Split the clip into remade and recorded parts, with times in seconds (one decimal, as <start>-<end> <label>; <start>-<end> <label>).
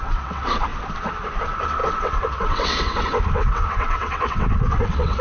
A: 0.0-0.7 remade; 0.7-1.4 recorded; 1.4-5.2 remade